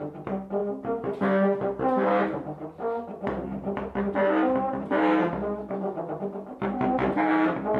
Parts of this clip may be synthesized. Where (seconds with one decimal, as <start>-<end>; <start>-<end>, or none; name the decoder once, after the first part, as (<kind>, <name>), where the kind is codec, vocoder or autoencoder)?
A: none